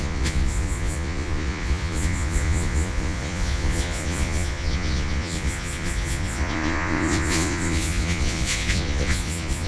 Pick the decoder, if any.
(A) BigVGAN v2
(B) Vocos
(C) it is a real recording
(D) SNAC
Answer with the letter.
B